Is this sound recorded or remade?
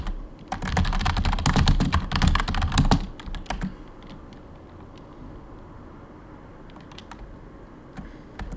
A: recorded